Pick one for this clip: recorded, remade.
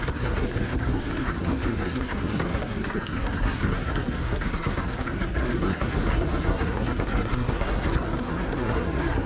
remade